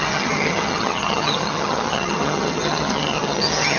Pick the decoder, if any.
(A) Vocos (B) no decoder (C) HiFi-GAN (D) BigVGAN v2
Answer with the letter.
C